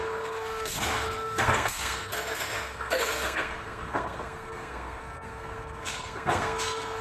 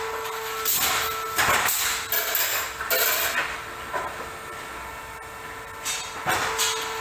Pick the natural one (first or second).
second